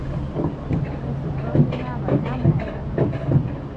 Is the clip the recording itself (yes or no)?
yes